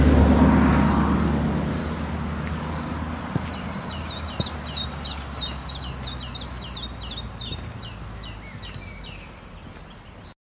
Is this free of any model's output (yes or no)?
yes